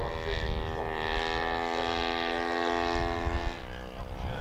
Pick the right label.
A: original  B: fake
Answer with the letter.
A